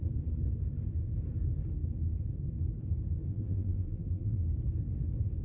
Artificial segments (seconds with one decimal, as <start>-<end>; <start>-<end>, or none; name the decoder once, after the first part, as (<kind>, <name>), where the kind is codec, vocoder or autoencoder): 3.3-4.4 (vocoder, BigVGAN v2)